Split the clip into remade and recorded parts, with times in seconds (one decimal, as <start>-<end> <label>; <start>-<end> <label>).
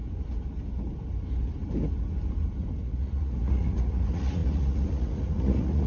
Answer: 0.0-2.8 recorded; 2.8-5.9 remade